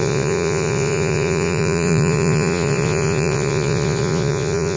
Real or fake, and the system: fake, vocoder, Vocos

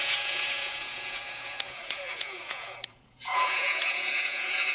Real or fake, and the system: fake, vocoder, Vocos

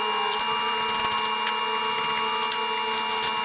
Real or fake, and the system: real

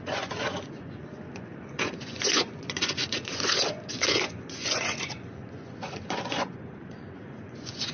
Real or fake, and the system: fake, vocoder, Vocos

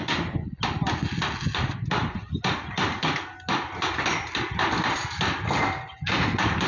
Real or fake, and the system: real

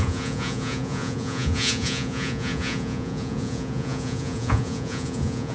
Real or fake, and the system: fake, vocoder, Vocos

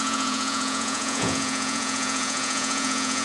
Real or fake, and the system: fake, vocoder, Vocos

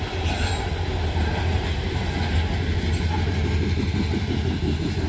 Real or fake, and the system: real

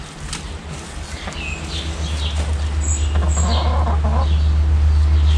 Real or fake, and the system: real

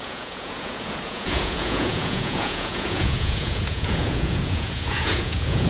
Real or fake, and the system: fake, vocoder, Vocos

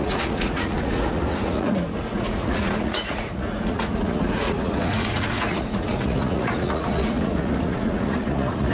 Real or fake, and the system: fake, vocoder, Vocos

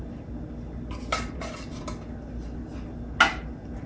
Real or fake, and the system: real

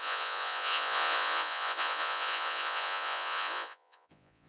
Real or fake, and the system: fake, vocoder, Vocos